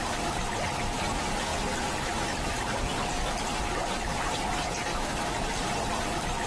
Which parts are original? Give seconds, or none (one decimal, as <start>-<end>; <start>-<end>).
4.9-5.9